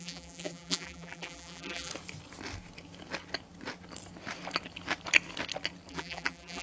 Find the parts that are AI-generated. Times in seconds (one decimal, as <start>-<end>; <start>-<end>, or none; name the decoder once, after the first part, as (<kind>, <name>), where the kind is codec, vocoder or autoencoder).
0.0-1.9 (vocoder, BigVGAN v2); 5.9-6.6